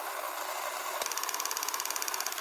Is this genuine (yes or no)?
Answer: yes